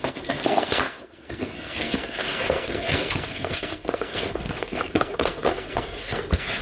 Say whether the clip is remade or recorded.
remade